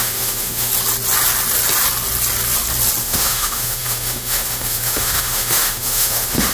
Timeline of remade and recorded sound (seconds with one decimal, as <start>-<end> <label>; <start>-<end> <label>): 0.0-0.7 remade; 0.7-3.0 recorded; 3.0-6.5 remade